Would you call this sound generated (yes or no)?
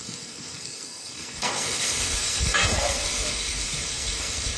yes